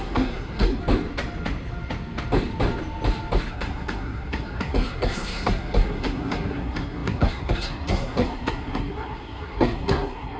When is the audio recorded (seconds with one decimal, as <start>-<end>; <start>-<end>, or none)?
0.8-3.5